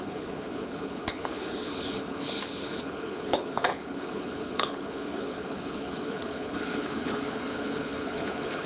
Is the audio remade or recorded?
remade